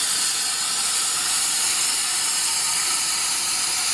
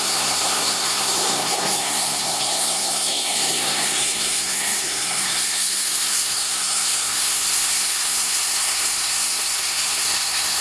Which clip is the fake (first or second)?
second